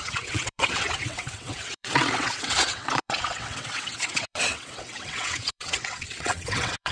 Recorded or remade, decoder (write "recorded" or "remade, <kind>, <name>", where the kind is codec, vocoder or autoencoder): remade, vocoder, WaveNeXt